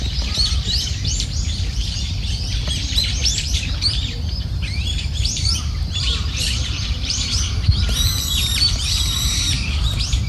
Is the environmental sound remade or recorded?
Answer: remade